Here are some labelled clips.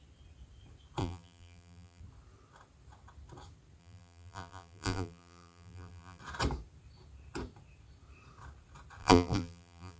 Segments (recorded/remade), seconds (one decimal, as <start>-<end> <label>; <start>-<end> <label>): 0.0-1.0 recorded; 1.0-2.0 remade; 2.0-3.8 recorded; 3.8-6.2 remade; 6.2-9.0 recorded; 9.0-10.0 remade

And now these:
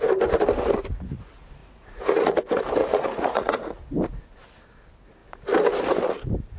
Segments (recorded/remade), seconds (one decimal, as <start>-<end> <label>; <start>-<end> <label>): 0.0-1.6 recorded; 1.6-2.4 remade; 2.4-2.8 recorded; 2.8-3.8 remade; 3.8-6.6 recorded

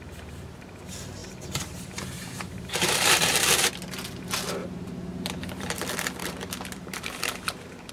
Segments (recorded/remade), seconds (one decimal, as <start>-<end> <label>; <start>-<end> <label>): 0.0-1.2 recorded; 1.2-3.7 remade; 3.7-4.6 recorded; 4.6-5.8 remade; 5.8-6.2 recorded; 6.2-7.9 remade

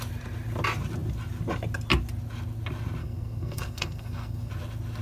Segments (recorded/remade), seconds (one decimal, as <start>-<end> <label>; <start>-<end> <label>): 0.0-3.0 recorded; 3.0-4.5 remade; 4.5-5.0 recorded

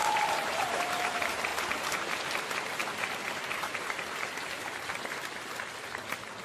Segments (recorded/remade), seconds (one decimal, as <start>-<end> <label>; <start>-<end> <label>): 0.0-1.1 remade; 1.1-6.4 recorded

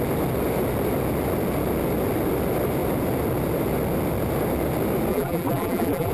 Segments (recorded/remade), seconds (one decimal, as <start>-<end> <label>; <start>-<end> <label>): 0.0-5.1 recorded; 5.1-6.1 remade